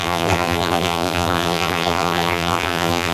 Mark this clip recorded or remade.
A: remade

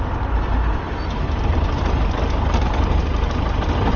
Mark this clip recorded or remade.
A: recorded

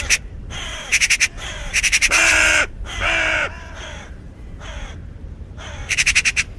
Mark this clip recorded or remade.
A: remade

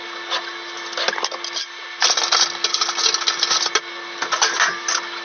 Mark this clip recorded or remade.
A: recorded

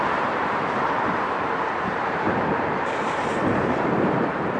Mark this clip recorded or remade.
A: remade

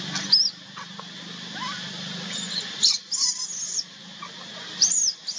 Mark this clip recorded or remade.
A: recorded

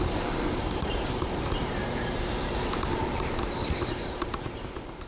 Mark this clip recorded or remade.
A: remade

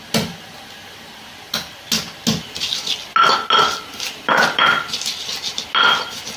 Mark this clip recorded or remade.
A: recorded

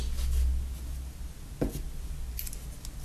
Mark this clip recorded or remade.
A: recorded